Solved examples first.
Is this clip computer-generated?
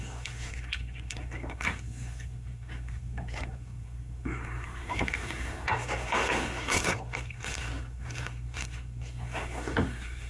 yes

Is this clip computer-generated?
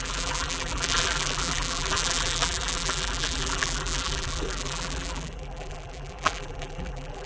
yes